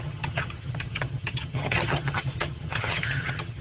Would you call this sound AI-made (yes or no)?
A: yes